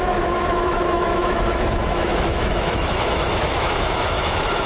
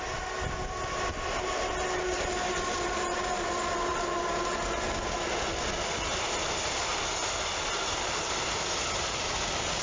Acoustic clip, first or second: second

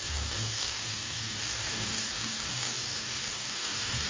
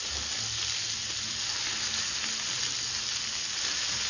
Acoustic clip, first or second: second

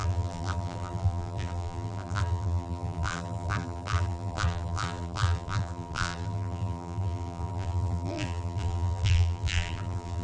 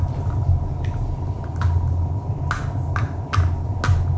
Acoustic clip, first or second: second